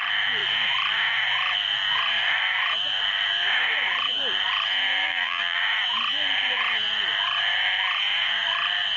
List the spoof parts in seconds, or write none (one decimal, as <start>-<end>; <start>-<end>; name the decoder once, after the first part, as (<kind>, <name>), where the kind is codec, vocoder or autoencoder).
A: 5.0-5.6 (vocoder, BigVGAN v2)